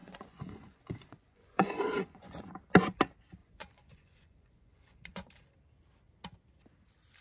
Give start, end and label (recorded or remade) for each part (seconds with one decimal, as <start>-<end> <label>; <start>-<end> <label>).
0.0-2.5 remade; 2.5-3.4 recorded; 3.4-5.3 remade; 5.3-7.2 recorded